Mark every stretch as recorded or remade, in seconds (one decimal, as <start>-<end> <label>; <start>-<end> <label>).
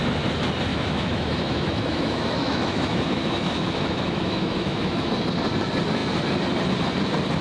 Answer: 0.0-0.7 recorded; 0.7-5.1 remade; 5.1-7.4 recorded